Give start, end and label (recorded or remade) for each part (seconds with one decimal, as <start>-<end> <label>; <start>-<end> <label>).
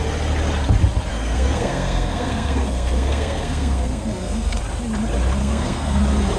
0.0-1.1 recorded; 1.1-4.6 remade; 4.6-5.4 recorded; 5.4-6.0 remade; 6.0-6.4 recorded